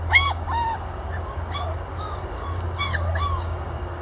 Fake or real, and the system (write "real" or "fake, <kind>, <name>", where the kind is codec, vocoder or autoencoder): fake, codec, DAC